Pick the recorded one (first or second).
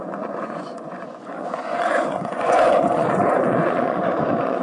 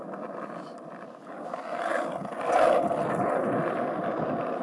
second